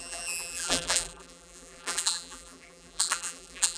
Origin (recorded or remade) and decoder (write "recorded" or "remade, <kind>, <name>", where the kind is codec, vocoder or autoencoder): remade, vocoder, BigVGAN v2